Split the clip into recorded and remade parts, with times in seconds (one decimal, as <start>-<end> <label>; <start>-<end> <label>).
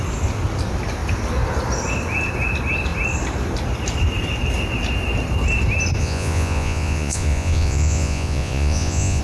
0.0-6.0 recorded; 6.0-9.2 remade